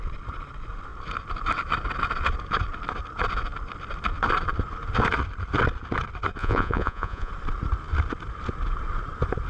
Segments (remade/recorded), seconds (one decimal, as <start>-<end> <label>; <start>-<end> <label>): 0.0-6.4 recorded; 6.4-7.3 remade; 7.3-9.5 recorded